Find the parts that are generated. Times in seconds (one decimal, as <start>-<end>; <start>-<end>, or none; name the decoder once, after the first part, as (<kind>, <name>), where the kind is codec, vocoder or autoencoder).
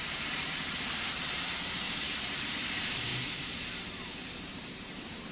0.0-3.1 (vocoder, BigVGAN v2); 4.4-5.3